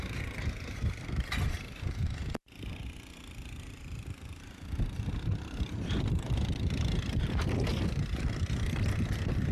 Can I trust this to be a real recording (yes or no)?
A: no